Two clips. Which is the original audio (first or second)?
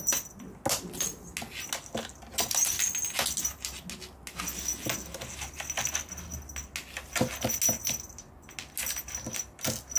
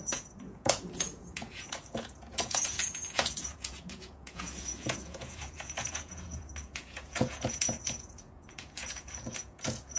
first